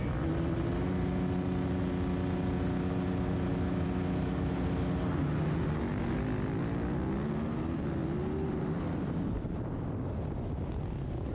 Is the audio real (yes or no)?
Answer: yes